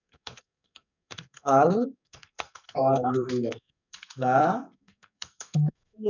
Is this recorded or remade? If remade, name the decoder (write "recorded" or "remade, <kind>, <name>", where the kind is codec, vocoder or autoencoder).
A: remade, codec, SNAC